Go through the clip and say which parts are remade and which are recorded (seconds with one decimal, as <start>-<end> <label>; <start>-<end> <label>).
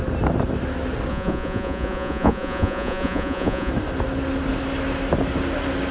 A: 0.0-1.1 recorded; 1.1-3.7 remade; 3.7-5.9 recorded